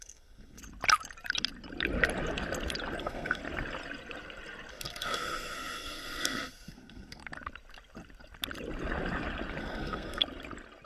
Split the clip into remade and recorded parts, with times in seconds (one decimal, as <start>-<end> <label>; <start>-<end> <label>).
0.0-0.6 remade; 0.6-3.0 recorded; 3.0-3.4 remade; 3.4-4.7 recorded; 4.7-7.2 remade; 7.2-9.6 recorded; 9.6-10.2 remade; 10.2-10.9 recorded